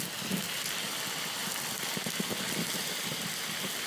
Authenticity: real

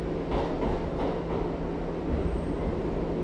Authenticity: real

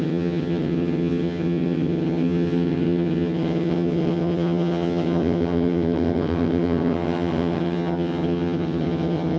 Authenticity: fake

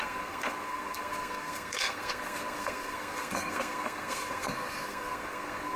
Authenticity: fake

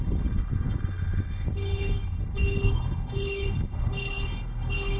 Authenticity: fake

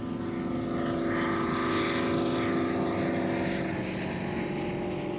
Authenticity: real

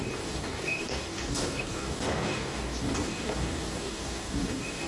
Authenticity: fake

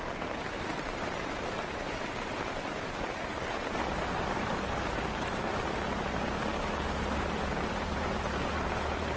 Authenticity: fake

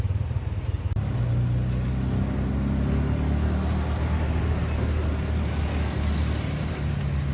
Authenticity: real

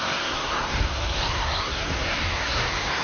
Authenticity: fake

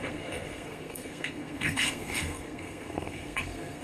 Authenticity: fake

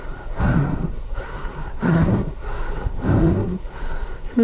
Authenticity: fake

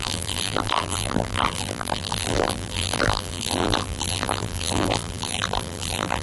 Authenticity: fake